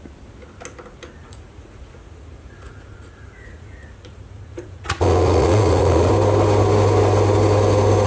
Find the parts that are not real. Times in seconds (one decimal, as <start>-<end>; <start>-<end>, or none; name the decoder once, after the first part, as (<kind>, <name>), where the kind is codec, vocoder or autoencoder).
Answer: 1.2-6.1 (vocoder, Vocos)